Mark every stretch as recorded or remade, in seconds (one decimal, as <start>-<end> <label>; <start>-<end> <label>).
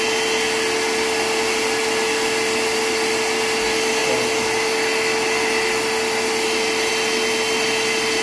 0.0-8.2 recorded